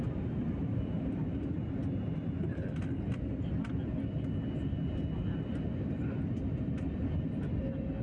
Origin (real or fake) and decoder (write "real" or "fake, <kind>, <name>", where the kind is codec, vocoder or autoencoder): real